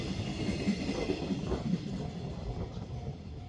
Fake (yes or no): no